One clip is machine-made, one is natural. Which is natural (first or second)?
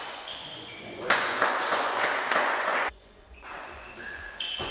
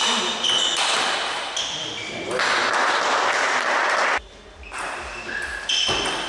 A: second